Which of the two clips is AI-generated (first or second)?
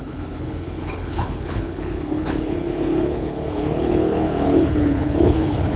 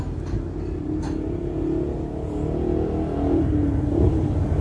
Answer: first